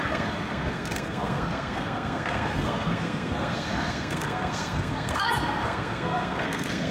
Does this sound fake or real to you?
fake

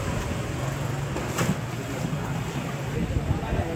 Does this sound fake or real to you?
real